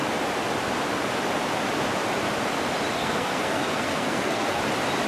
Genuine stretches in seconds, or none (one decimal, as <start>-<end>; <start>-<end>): 0.0-2.9; 4.6-5.1